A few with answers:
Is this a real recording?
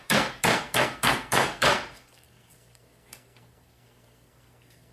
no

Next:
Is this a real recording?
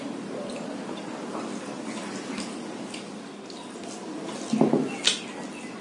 yes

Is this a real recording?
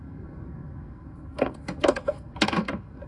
no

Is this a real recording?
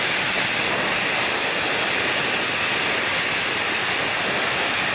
yes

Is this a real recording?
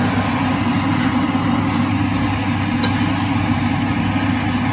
yes